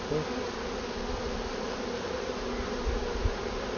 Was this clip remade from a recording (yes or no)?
no